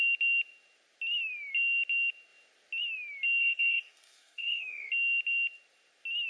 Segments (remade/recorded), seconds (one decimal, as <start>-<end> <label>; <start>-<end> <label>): 0.0-3.4 recorded; 3.4-4.9 remade; 4.9-6.3 recorded

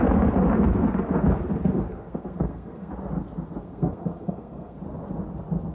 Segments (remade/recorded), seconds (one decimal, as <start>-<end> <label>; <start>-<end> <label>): 0.0-1.9 recorded; 1.9-2.9 remade; 2.9-3.6 recorded; 3.6-4.8 remade; 4.8-5.7 recorded